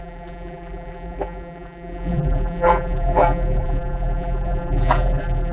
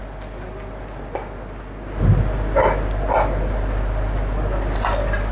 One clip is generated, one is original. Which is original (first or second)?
second